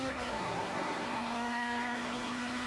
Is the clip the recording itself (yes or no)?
no